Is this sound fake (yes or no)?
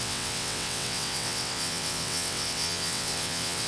yes